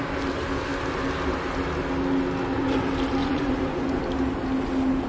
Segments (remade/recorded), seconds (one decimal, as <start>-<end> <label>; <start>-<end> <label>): 0.0-3.2 recorded; 3.2-4.0 remade; 4.0-5.1 recorded